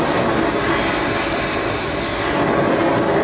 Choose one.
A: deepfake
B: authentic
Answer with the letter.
B